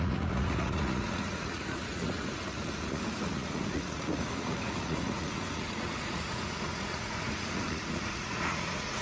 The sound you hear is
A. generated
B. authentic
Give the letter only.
A